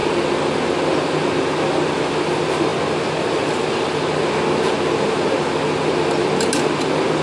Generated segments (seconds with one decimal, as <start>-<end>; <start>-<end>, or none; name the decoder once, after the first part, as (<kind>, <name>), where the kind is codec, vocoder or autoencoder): none